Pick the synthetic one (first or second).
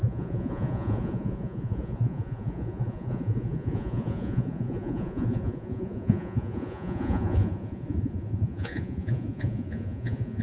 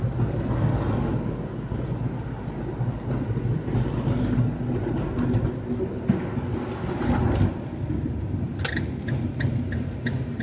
first